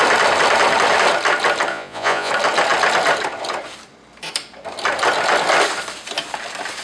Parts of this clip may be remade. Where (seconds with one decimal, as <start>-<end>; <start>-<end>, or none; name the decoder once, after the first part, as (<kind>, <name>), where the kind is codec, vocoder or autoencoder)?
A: 1.7-2.3 (vocoder, Vocos)